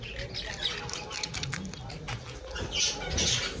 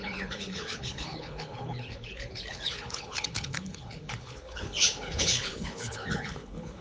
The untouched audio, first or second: first